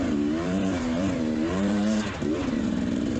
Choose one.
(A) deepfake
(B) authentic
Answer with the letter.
A